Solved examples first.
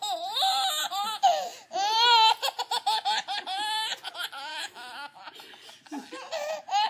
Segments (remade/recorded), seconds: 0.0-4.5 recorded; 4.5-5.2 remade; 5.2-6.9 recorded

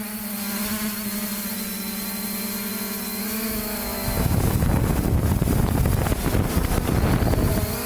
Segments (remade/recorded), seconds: 0.0-3.2 recorded; 3.2-4.5 remade; 4.5-7.9 recorded

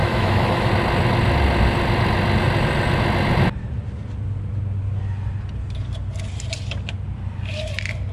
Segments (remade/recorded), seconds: 0.0-0.7 remade; 0.7-8.1 recorded

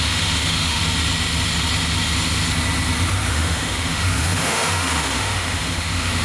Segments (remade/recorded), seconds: 0.0-0.8 remade; 0.8-3.3 recorded; 3.3-6.2 remade

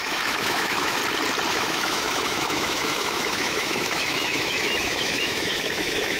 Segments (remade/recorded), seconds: 0.0-1.0 remade; 1.0-1.5 recorded; 1.5-6.2 remade

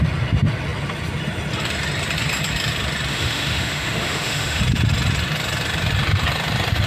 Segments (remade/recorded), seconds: 0.0-3.1 recorded; 3.1-4.6 remade; 4.6-6.9 recorded